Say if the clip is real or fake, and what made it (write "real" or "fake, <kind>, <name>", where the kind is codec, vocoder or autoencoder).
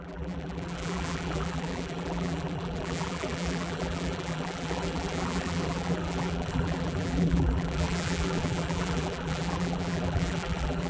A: fake, vocoder, BigVGAN v2